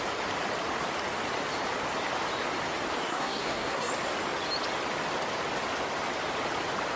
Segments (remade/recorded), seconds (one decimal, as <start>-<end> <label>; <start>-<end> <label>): 0.0-3.1 recorded; 3.1-3.9 remade; 3.9-7.0 recorded